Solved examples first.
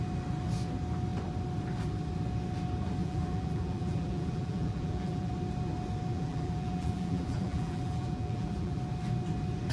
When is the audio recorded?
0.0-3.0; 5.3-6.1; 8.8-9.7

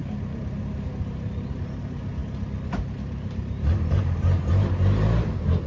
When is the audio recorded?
none